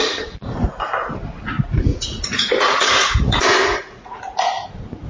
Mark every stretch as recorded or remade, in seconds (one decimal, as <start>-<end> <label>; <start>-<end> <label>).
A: 0.0-1.9 recorded; 1.9-4.2 remade; 4.2-5.1 recorded